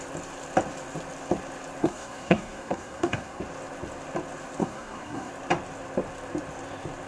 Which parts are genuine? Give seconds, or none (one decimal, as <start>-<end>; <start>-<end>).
0.0-1.8; 3.4-4.6; 5.3-7.1